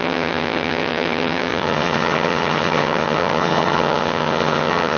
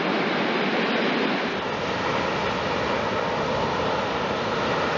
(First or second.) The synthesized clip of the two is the first